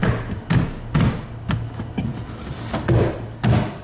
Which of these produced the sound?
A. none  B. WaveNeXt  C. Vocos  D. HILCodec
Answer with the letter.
A